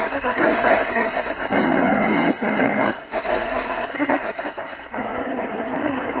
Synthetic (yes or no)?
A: yes